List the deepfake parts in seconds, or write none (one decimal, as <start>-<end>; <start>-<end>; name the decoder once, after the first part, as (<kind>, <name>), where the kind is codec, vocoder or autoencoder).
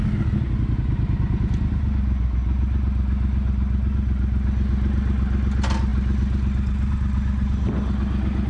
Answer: none